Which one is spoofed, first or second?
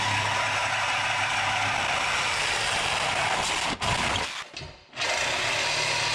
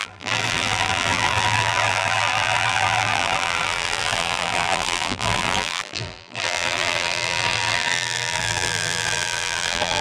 second